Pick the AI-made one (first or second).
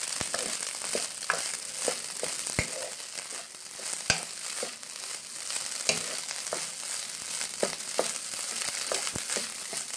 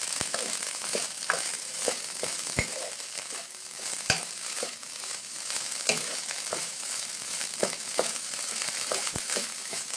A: second